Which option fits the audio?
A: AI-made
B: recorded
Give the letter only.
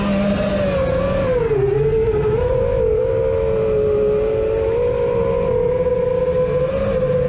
B